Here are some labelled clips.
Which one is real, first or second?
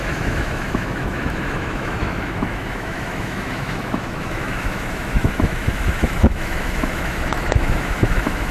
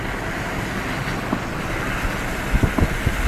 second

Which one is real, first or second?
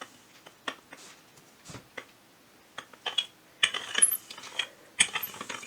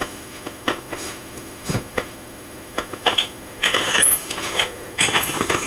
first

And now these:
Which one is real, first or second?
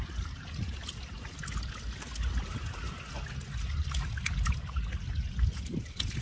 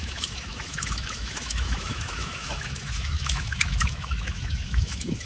first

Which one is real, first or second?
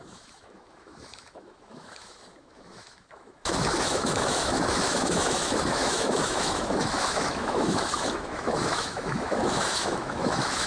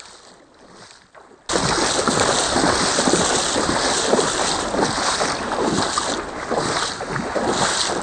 second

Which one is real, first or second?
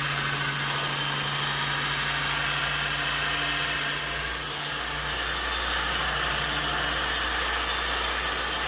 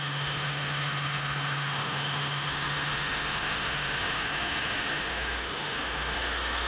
first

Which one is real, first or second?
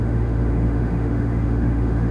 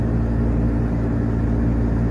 second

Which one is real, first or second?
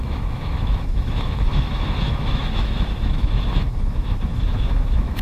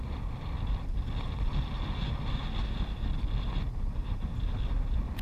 second